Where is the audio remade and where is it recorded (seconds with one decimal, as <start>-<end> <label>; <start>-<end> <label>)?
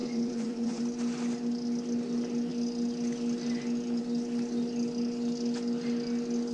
0.0-0.8 remade; 0.8-6.5 recorded